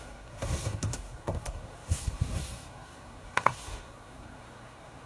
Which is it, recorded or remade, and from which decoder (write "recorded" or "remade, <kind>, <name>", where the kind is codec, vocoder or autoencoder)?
remade, codec, SNAC